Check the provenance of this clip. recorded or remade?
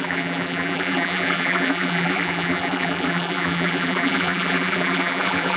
remade